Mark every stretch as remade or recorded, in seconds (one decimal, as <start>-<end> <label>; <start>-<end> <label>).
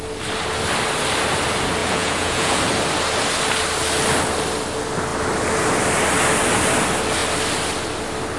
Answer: 0.0-1.8 recorded; 1.8-2.6 remade; 2.6-8.4 recorded